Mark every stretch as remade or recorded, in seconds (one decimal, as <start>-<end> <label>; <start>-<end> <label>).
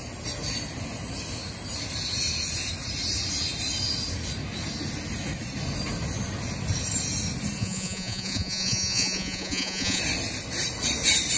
0.0-7.6 recorded; 7.6-10.0 remade; 10.0-11.4 recorded